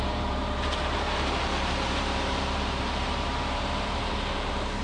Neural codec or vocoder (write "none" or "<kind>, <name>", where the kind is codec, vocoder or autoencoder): vocoder, BigVGAN v2